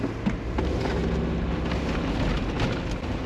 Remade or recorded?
recorded